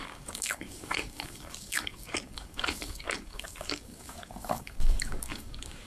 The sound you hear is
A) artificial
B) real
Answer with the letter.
A